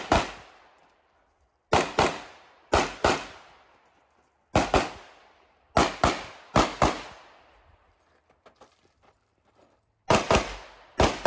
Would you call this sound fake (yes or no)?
no